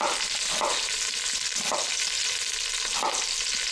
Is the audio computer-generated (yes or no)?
no